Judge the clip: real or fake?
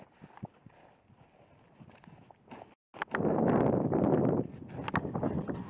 real